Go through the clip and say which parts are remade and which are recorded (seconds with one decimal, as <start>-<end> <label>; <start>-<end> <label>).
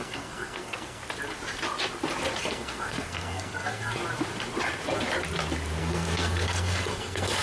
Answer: 0.0-1.0 remade; 1.0-2.4 recorded; 2.4-4.0 remade; 4.0-5.8 recorded; 5.8-7.4 remade